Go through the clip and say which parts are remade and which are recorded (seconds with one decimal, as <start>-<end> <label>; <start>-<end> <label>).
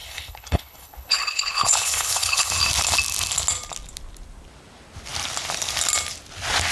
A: 0.0-2.5 remade; 2.5-6.7 recorded